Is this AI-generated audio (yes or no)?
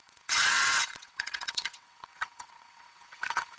yes